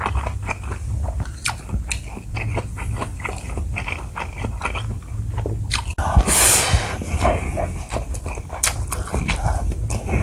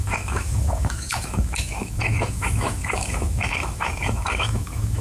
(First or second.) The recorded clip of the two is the first